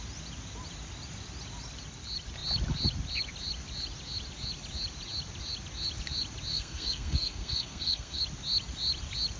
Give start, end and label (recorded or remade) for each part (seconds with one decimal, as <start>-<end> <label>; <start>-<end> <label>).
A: 0.0-6.5 recorded; 6.5-8.2 remade; 8.2-9.4 recorded